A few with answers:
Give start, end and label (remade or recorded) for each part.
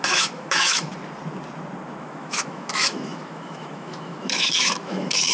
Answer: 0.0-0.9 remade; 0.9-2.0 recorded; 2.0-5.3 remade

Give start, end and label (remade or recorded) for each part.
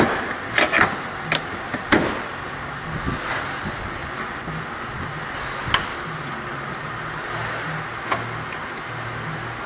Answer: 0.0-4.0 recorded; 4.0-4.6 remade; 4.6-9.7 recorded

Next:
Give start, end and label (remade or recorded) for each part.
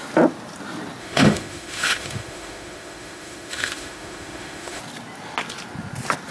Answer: 0.0-1.0 recorded; 1.0-4.8 remade; 4.8-6.3 recorded